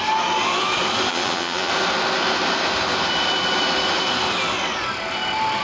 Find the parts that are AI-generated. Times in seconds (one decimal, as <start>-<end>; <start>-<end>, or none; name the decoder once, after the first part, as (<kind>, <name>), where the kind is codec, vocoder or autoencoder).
1.1-1.7 (vocoder, Vocos)